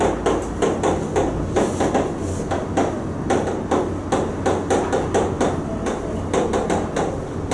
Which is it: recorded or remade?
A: recorded